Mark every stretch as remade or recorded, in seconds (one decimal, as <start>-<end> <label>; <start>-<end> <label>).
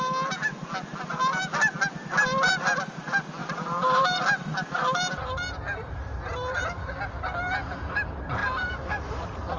0.0-3.4 recorded; 3.4-4.0 remade; 4.0-8.4 recorded; 8.4-9.0 remade; 9.0-9.6 recorded